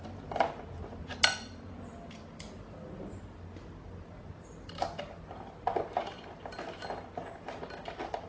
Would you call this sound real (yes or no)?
yes